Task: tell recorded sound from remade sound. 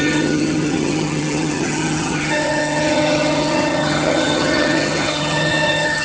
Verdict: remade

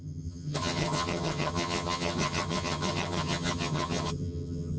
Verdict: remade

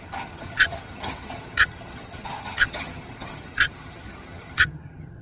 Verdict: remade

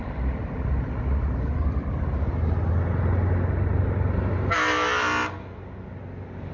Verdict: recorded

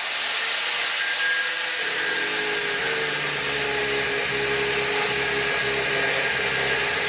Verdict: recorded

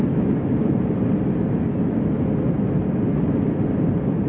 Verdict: recorded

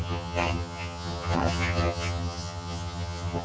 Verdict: remade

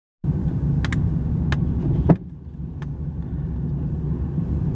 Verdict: recorded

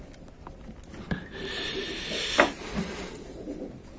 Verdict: recorded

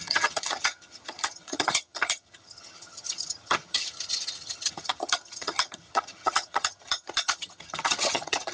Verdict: remade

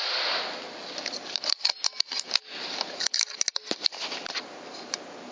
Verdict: recorded